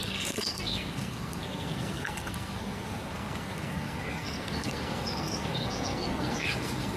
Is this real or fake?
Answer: fake